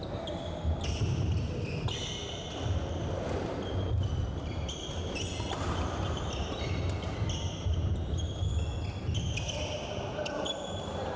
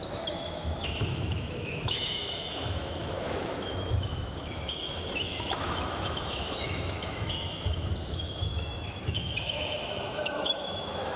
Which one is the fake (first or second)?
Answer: second